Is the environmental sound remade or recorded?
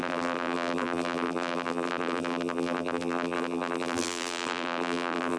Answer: remade